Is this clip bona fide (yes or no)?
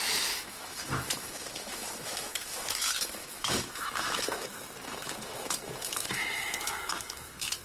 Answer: no